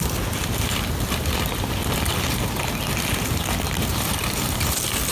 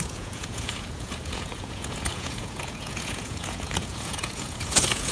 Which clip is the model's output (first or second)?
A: second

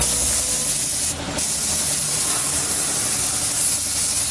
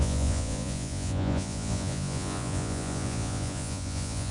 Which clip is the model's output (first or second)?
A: second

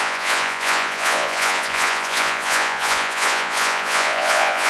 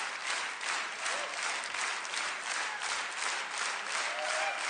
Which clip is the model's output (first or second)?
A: first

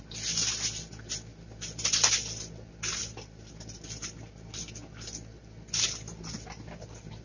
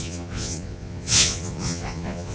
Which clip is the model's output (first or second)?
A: second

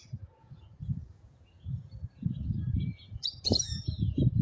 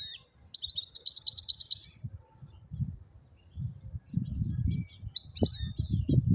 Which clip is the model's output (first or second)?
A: first